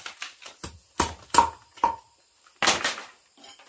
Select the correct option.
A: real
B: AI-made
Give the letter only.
A